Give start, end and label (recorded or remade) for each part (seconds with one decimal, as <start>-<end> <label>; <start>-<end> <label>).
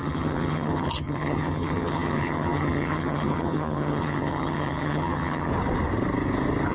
0.0-5.5 remade; 5.5-6.7 recorded